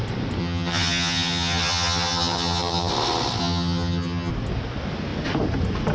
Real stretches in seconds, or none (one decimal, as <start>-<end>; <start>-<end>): 0.0-0.4; 2.9-3.4; 4.3-5.9